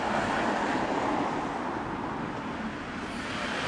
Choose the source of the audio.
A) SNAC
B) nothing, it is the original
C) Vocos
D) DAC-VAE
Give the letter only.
B